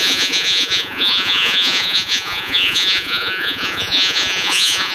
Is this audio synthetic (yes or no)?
yes